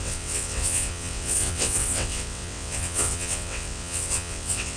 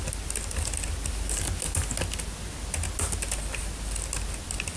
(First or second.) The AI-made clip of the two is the first